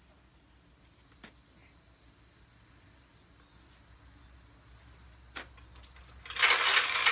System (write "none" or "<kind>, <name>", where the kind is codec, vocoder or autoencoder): none